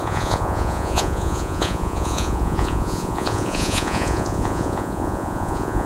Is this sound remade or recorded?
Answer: remade